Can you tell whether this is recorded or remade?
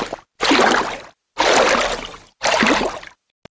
recorded